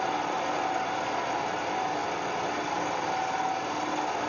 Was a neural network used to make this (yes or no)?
no